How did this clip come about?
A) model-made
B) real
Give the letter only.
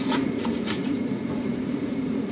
A